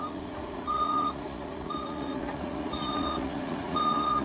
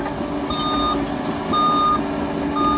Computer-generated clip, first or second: first